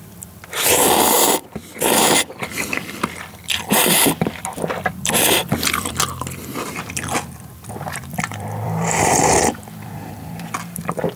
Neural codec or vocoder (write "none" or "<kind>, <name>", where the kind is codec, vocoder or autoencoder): vocoder, BigVGAN v2